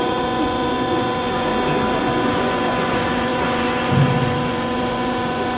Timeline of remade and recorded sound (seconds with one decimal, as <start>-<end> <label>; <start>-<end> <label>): 0.0-1.5 remade; 1.5-2.0 recorded; 2.0-5.6 remade